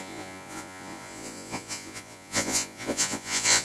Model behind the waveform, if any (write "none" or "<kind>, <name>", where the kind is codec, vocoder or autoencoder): vocoder, Vocos